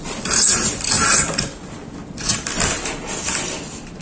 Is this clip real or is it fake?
real